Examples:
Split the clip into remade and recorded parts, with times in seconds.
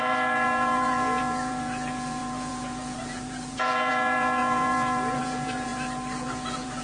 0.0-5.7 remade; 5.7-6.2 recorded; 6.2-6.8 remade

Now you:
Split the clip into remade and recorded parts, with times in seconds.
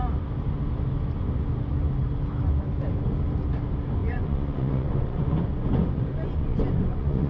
0.0-4.0 recorded; 4.0-7.3 remade